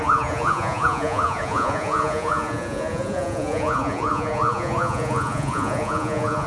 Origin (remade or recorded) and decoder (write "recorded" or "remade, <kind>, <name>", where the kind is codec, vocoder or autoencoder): remade, vocoder, Vocos